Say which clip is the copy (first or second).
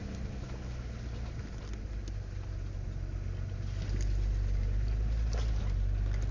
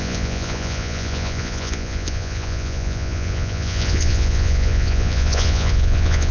second